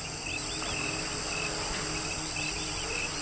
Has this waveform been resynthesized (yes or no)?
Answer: no